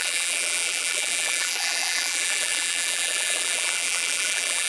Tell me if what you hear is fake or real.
fake